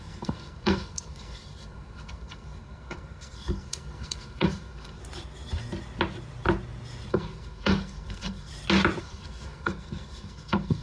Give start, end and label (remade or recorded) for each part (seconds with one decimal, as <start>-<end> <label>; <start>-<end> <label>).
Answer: 0.0-5.0 remade; 5.0-7.1 recorded; 7.1-8.5 remade; 8.5-9.0 recorded; 9.0-10.8 remade